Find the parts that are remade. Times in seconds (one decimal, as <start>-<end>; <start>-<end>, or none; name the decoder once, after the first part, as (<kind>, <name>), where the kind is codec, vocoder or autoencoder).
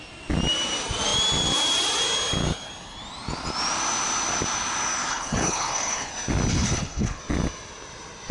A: 5.1-6.1 (codec, HILCodec); 6.5-7.2